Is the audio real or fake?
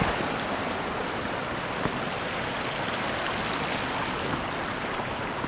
real